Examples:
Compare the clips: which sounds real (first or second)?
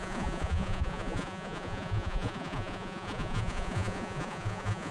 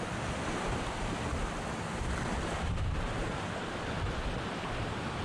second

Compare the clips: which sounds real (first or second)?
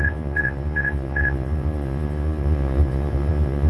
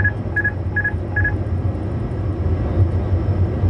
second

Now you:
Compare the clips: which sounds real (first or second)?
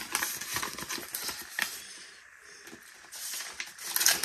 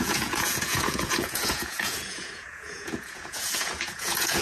first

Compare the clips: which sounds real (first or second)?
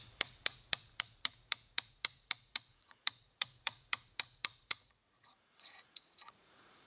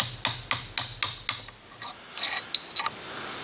second